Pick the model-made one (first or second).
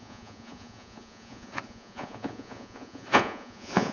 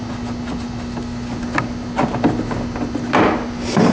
first